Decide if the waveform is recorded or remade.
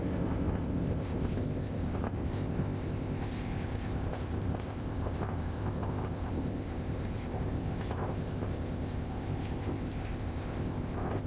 remade